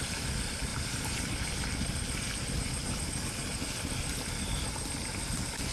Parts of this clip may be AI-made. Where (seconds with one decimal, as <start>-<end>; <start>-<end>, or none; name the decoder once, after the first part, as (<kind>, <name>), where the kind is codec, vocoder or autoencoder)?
none